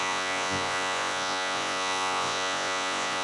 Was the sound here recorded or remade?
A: remade